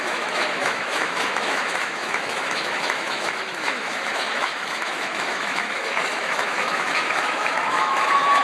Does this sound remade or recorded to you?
remade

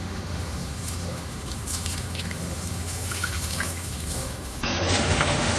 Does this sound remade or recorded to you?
remade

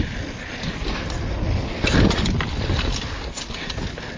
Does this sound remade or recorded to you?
recorded